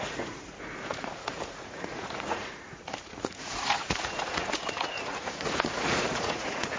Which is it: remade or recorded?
remade